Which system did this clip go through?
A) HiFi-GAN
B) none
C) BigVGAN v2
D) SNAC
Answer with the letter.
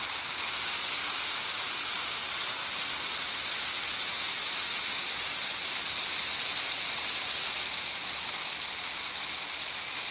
B